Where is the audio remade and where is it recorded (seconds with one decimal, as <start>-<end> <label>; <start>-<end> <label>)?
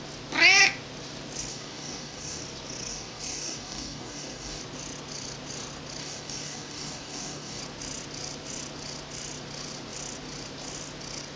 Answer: 0.0-1.5 recorded; 1.5-2.4 remade; 2.4-2.9 recorded; 2.9-4.6 remade; 4.6-6.0 recorded; 6.0-7.6 remade; 7.6-11.4 recorded